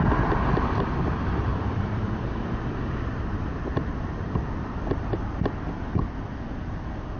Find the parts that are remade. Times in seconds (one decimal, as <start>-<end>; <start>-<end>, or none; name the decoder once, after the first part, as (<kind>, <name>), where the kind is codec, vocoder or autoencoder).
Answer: 1.5-2.3 (vocoder, BigVGAN v2); 3.5-5.2